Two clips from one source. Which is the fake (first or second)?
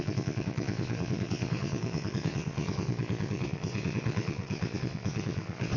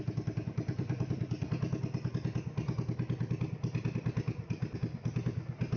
first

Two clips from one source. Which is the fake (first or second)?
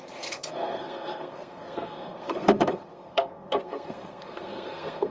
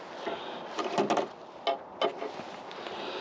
first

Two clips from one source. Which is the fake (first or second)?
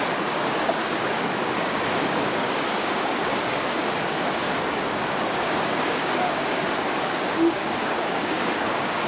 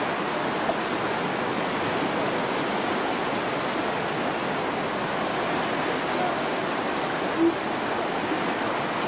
first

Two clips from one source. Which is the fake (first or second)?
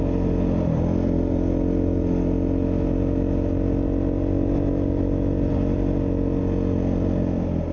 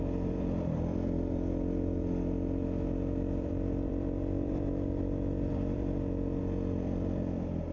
second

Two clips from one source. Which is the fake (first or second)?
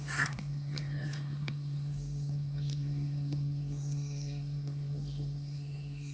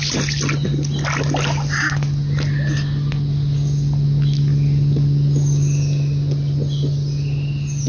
first